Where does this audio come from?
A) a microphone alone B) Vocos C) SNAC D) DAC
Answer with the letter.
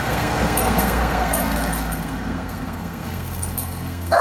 C